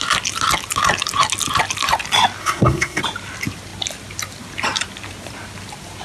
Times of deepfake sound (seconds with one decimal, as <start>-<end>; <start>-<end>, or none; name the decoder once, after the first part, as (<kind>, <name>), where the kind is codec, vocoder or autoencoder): 2.4-3.0 (codec, SNAC)